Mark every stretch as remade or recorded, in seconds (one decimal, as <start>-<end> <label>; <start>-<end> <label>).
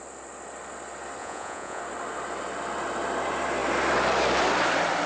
0.0-1.2 recorded; 1.2-1.8 remade; 1.8-5.1 recorded